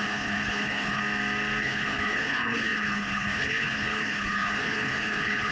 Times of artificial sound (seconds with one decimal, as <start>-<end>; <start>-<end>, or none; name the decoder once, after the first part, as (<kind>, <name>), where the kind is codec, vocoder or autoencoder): 0.0-1.0 (codec, HILCodec); 1.6-5.5